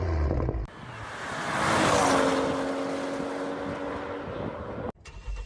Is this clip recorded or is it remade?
recorded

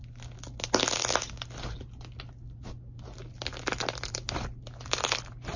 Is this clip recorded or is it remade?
recorded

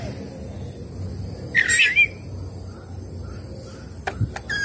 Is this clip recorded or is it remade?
recorded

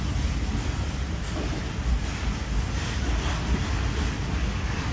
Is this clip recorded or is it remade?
recorded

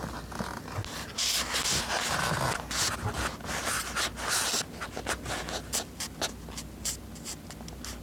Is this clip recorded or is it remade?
recorded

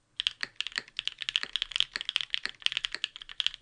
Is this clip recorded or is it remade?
recorded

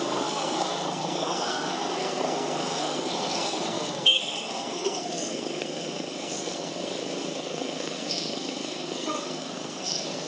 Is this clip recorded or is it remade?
remade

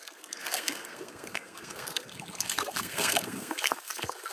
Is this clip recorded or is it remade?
remade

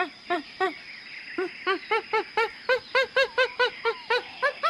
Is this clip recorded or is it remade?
recorded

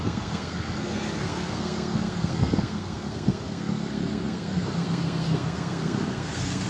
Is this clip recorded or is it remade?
remade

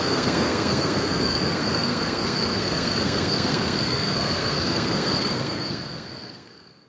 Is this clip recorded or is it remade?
remade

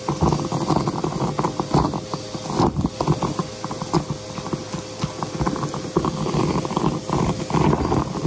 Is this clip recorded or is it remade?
recorded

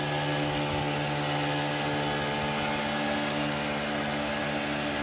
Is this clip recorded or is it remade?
recorded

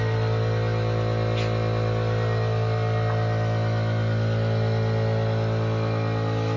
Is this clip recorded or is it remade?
recorded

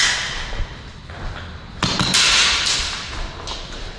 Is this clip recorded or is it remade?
recorded